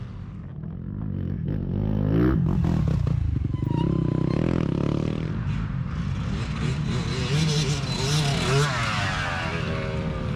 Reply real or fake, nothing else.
real